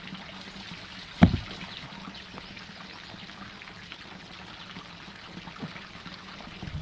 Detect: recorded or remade recorded